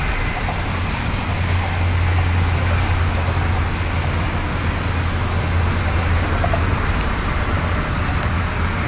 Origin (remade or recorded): recorded